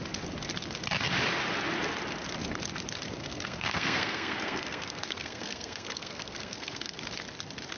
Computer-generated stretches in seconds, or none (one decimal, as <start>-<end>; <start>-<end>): 3.2-7.0